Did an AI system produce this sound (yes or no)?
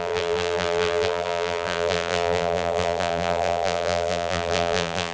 yes